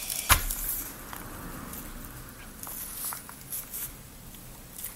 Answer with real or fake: real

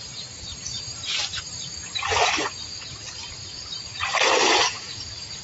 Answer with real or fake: fake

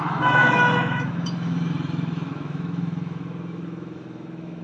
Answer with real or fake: fake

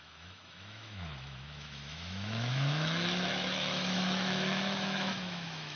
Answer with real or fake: fake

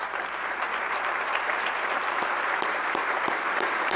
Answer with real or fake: fake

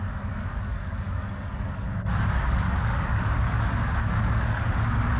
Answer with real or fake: fake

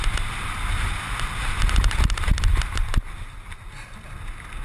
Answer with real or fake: real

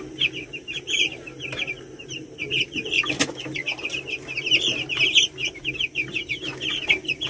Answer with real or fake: real